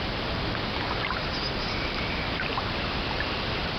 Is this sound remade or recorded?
recorded